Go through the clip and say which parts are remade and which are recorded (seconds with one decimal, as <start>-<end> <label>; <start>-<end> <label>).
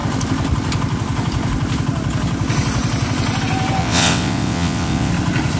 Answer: 0.0-3.8 recorded; 3.8-5.1 remade; 5.1-5.6 recorded